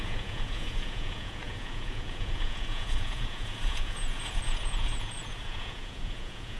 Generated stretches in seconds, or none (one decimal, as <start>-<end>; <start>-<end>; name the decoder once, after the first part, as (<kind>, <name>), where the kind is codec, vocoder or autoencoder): 0.0-6.6 (vocoder, Vocos)